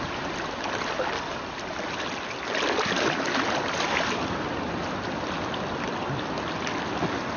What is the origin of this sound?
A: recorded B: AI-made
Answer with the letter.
A